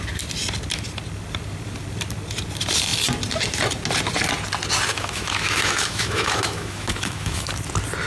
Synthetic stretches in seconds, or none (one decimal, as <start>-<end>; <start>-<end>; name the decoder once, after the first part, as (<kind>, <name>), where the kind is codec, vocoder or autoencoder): 4.9-7.5 (autoencoder, DAC-VAE)